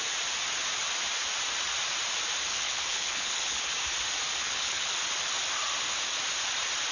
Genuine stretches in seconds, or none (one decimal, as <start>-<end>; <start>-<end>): 0.0-2.5; 3.7-4.4; 4.9-6.9